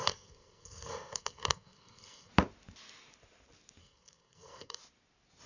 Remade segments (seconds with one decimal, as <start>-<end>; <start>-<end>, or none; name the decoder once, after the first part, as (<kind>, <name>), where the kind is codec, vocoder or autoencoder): 0.0-2.3 (codec, SNAC); 3.8-4.8